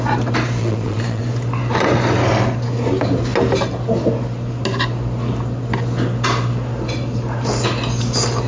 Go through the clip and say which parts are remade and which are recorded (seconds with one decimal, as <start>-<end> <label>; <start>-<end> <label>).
0.0-0.6 recorded; 0.6-1.2 remade; 1.2-8.5 recorded